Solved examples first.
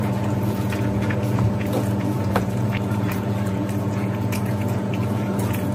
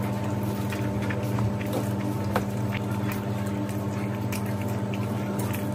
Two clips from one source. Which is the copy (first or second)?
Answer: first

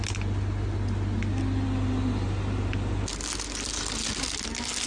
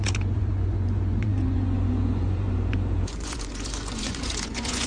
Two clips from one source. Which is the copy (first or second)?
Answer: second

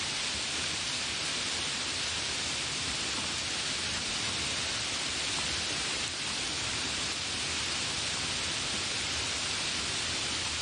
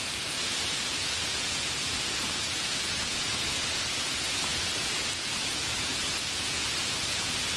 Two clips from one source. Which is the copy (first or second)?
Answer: second